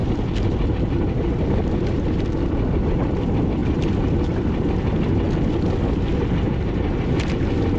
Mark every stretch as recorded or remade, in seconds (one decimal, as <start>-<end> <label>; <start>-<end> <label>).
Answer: 0.0-7.8 recorded